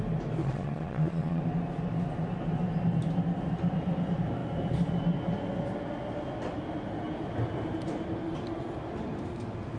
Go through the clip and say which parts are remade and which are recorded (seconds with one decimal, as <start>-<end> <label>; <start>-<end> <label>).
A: 0.0-0.4 recorded; 0.4-1.4 remade; 1.4-9.8 recorded